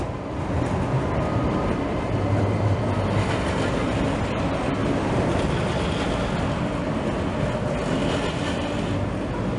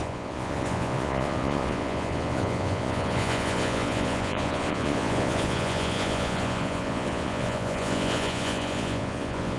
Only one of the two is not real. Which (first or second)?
second